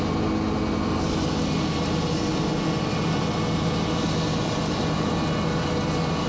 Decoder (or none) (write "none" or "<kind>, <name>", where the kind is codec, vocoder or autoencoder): none